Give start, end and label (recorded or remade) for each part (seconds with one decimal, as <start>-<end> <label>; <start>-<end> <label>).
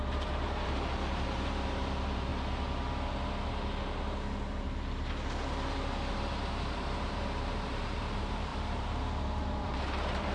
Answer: 0.0-2.3 remade; 2.3-6.1 recorded; 6.1-10.3 remade